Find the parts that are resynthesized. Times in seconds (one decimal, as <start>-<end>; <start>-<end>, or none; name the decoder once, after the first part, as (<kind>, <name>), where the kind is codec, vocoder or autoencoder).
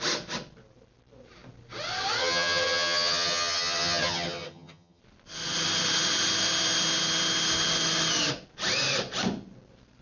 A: 2.2-5.0 (vocoder, HiFi-GAN)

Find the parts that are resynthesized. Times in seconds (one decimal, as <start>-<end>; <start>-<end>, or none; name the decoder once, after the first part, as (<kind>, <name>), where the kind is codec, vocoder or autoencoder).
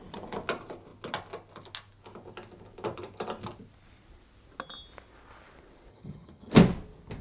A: 5.9-6.5 (vocoder, HiFi-GAN)